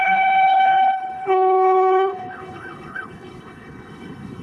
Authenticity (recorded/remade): remade